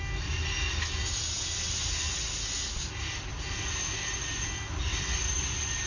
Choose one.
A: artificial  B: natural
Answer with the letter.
B